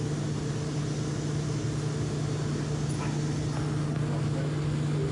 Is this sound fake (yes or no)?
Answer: no